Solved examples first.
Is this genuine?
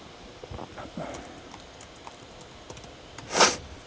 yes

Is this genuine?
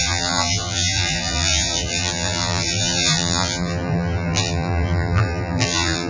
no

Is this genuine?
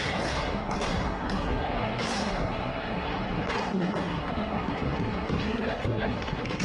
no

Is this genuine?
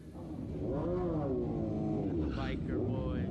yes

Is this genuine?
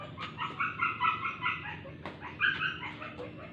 yes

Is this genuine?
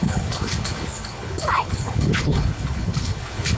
no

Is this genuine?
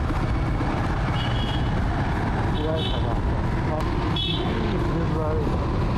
yes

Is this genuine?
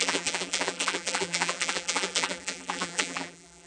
no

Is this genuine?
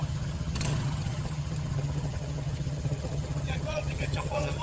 no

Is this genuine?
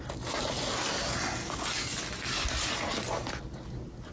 yes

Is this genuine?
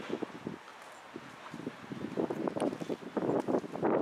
yes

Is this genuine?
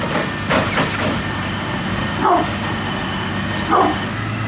yes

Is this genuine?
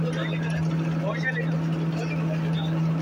yes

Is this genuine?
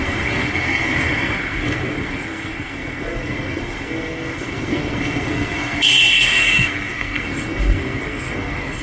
no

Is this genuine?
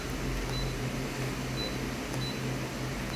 yes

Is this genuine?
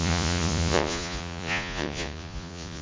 no